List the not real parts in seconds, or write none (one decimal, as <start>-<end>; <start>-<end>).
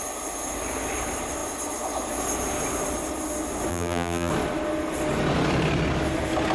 3.7-4.3